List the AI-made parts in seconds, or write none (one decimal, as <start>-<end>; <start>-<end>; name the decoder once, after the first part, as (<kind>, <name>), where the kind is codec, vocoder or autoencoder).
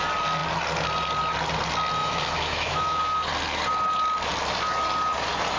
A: 2.0-3.0 (autoencoder, DAC-VAE)